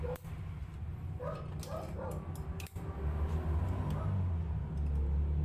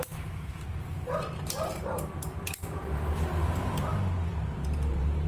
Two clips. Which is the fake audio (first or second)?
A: second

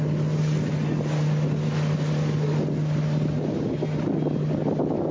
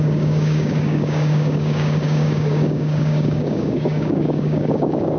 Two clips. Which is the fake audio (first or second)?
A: second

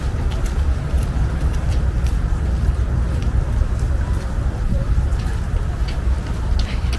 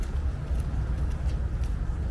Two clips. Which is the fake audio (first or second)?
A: first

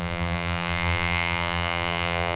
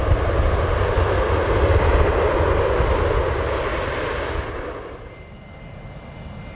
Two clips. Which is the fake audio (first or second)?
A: first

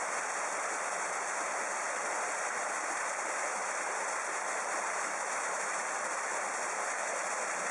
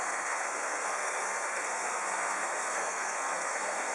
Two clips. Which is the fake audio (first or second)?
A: second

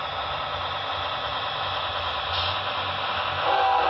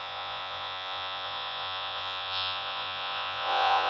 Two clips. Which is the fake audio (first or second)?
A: second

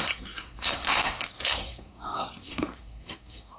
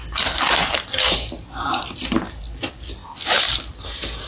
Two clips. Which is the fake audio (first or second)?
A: first